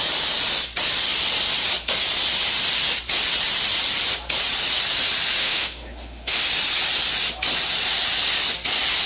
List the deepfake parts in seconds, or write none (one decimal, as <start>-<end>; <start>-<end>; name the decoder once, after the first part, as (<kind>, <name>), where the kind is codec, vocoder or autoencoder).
5.4-6.4 (autoencoder, DAC-VAE)